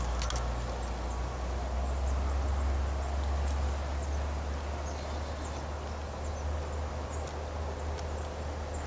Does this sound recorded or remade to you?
recorded